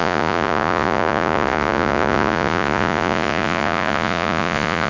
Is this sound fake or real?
fake